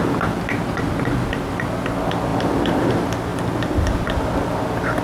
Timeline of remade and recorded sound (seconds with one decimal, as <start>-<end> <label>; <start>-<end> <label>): 0.0-2.3 recorded; 2.3-2.9 remade; 2.9-5.0 recorded